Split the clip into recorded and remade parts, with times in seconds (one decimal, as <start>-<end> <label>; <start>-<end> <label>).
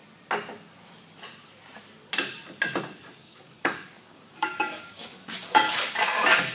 0.0-3.2 recorded; 3.2-6.5 remade